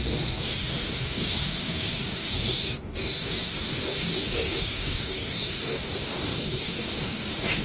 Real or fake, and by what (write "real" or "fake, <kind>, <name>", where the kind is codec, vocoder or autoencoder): fake, codec, DAC